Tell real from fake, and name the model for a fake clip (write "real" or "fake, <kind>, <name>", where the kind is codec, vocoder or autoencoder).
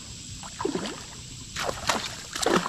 real